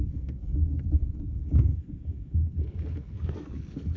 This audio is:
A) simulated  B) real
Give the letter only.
A